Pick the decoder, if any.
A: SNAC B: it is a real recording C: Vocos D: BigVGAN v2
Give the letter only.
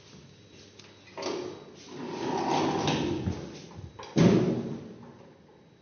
B